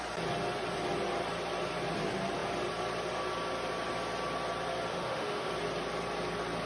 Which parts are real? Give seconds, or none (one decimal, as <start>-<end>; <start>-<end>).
0.0-4.9; 5.5-6.7